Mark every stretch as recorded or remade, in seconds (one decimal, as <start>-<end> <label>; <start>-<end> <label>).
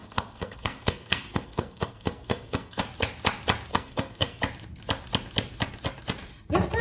0.0-2.8 remade; 2.8-3.7 recorded; 3.7-4.4 remade; 4.4-6.8 recorded